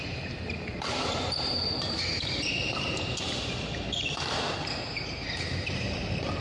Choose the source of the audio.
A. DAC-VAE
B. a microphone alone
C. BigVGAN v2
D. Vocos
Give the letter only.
C